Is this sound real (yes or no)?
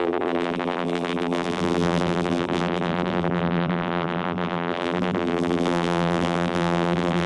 no